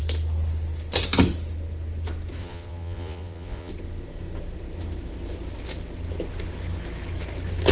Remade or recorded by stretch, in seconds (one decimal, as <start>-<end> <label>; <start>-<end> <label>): 0.0-2.4 recorded; 2.4-3.7 remade; 3.7-7.7 recorded